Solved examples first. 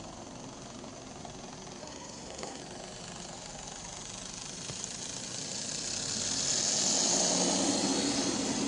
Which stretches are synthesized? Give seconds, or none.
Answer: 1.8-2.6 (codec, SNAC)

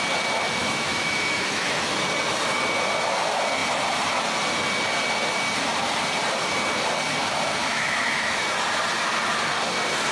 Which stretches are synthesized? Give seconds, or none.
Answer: 0.6-1.9 (autoencoder, DAC-VAE); 7.6-8.4